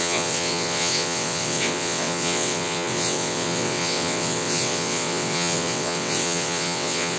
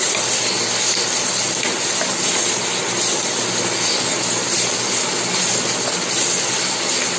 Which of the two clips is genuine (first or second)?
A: second